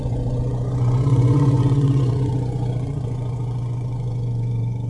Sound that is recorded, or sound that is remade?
remade